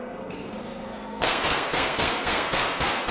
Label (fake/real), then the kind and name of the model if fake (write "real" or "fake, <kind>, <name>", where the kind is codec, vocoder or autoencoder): fake, codec, SNAC